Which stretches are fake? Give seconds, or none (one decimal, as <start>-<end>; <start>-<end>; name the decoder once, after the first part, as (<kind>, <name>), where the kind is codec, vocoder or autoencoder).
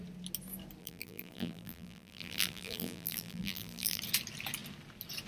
0.8-4.0 (vocoder, BigVGAN v2)